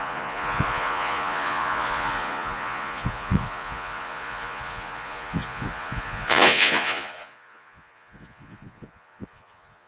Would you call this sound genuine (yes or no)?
no